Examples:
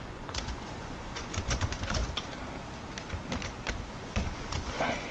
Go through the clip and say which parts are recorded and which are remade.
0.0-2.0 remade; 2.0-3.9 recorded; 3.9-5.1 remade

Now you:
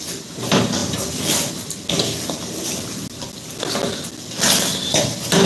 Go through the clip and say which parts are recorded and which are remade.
0.0-5.5 recorded

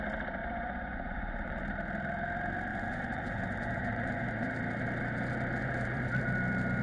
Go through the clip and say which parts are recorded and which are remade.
0.0-0.4 recorded; 0.4-1.6 remade; 1.6-2.7 recorded; 2.7-4.5 remade; 4.5-5.6 recorded; 5.6-6.1 remade; 6.1-6.8 recorded

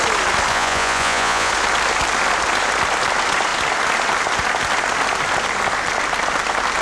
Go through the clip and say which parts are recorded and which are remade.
0.0-0.5 recorded; 0.5-1.5 remade; 1.5-6.8 recorded

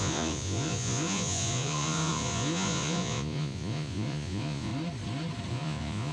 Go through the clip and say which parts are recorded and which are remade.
0.0-4.7 remade; 4.7-5.5 recorded; 5.5-6.1 remade

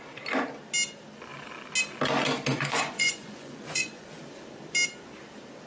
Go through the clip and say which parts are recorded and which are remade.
0.0-2.5 recorded; 2.5-4.2 remade; 4.2-5.7 recorded

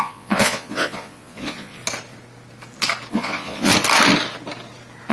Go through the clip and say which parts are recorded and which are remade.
0.0-1.8 remade; 1.8-3.1 recorded; 3.1-3.7 remade; 3.7-5.1 recorded

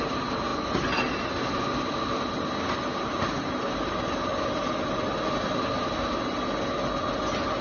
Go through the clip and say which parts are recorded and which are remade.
0.0-7.6 recorded